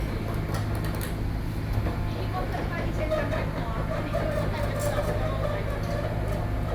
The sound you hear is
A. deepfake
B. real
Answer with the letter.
B